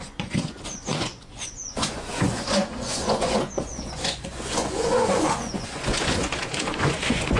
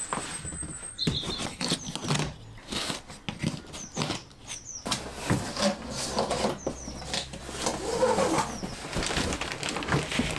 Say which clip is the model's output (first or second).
first